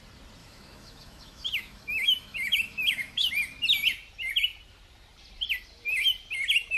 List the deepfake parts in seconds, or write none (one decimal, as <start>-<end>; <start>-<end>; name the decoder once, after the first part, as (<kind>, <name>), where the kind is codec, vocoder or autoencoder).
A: 0.4-3.3 (autoencoder, DAC-VAE)